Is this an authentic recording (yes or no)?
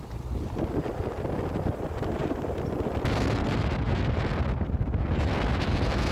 yes